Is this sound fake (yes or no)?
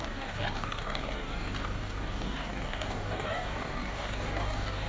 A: yes